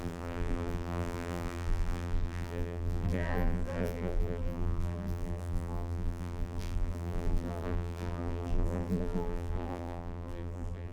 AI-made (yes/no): yes